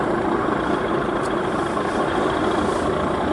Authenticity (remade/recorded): recorded